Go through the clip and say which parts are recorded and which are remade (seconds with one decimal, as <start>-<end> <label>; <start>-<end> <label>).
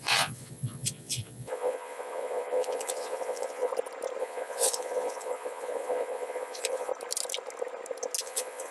0.0-3.7 remade; 3.7-4.2 recorded; 4.2-6.9 remade; 6.9-8.2 recorded; 8.2-8.7 remade